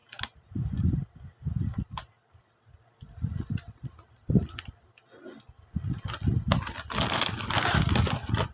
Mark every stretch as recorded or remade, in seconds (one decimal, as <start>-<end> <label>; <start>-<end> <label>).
0.0-8.5 recorded